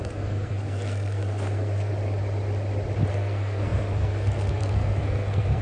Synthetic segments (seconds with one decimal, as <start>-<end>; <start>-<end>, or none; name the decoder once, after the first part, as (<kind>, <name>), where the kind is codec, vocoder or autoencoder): 0.0-1.9 (codec, SNAC); 3.1-5.6